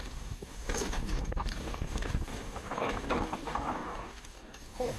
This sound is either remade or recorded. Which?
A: remade